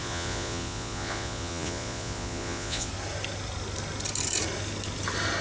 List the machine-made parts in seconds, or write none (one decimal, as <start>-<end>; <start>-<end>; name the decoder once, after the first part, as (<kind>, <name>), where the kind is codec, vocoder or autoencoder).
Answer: 0.0-2.9 (vocoder, Vocos)